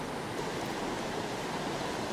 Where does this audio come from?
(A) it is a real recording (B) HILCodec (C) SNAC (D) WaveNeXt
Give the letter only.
A